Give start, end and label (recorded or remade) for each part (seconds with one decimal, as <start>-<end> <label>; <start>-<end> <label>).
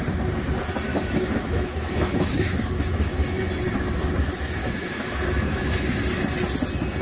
0.0-0.9 recorded; 0.9-3.5 remade; 3.5-4.6 recorded; 4.6-6.0 remade; 6.0-7.0 recorded